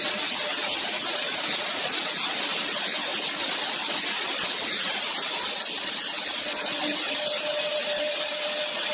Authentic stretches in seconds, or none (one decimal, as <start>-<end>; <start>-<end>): 0.0-0.6; 2.1-3.1; 4.3-8.9

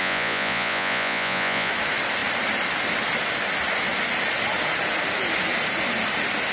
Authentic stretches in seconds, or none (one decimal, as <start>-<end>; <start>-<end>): 1.7-6.5

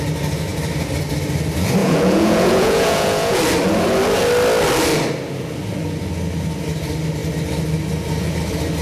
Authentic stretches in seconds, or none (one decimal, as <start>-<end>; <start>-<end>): 0.0-1.8; 3.4-8.8

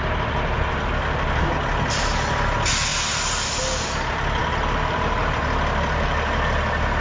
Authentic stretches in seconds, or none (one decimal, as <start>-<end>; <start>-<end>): 0.0-7.0

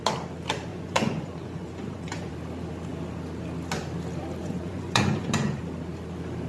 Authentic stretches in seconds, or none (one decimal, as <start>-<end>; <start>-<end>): 0.0-0.7; 2.3-4.4; 5.6-6.5

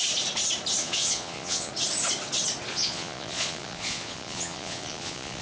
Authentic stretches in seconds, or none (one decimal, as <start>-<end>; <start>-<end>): 0.0-0.8; 1.7-2.7

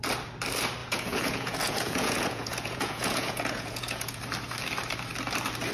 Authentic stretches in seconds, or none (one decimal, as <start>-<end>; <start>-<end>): 0.0-0.8; 4.2-5.7